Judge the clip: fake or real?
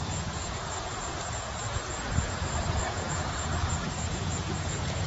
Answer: fake